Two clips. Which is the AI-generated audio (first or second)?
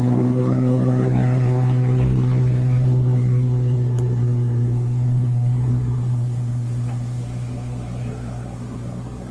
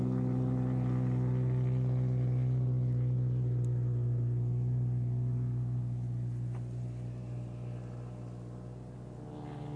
first